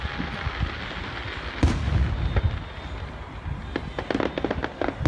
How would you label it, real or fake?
real